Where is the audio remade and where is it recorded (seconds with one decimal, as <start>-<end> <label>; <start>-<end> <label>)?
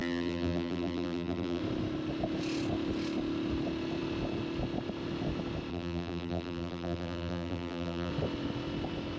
0.0-1.6 remade; 1.6-5.7 recorded; 5.7-8.1 remade; 8.1-9.2 recorded